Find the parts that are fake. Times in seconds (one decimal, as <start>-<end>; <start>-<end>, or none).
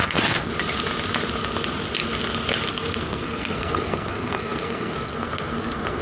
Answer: 0.0-0.5; 2.7-6.0